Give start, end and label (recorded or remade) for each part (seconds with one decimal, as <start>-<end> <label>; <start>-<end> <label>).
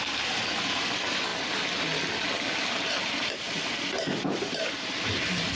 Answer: 0.0-5.6 recorded